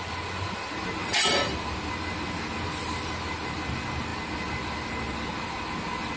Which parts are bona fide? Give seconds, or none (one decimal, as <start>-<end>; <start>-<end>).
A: 0.0-6.2